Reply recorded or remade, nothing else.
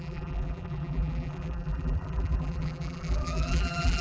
remade